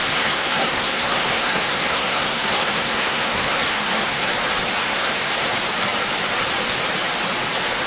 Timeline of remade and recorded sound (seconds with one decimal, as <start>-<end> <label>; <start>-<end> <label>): 0.0-4.3 remade; 4.3-4.8 recorded; 4.8-5.5 remade; 5.5-7.9 recorded